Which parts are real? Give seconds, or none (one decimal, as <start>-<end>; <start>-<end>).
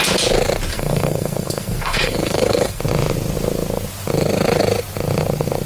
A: 0.0-0.7; 2.8-5.7